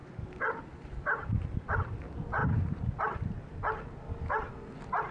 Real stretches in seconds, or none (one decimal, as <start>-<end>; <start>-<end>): 0.0-5.1